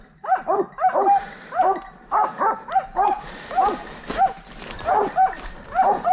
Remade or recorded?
recorded